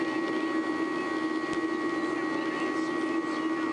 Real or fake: real